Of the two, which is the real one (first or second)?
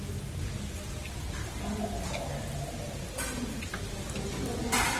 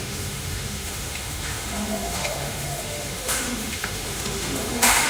first